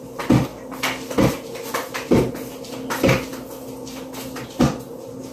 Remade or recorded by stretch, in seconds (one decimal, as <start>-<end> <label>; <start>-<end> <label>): 0.0-5.3 recorded